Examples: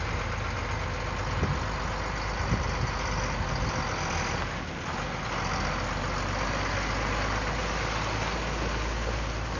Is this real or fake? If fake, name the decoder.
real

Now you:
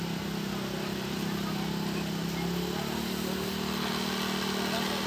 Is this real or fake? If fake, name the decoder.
real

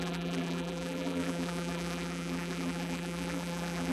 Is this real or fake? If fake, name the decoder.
fake, vocoder, BigVGAN v2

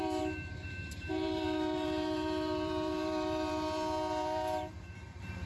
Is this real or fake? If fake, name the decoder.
fake, vocoder, BigVGAN v2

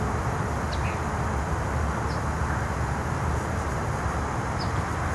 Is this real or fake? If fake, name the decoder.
real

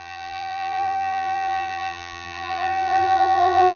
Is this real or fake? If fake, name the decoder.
fake, vocoder, BigVGAN v2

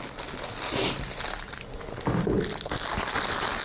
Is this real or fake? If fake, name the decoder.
real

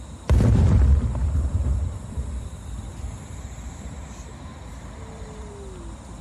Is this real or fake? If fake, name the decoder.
fake, vocoder, BigVGAN v2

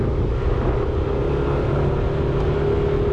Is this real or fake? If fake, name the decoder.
real